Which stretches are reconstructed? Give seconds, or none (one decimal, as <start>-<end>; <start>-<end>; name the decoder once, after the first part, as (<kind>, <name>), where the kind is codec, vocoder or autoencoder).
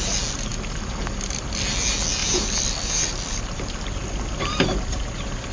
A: 2.2-3.9 (vocoder, BigVGAN v2)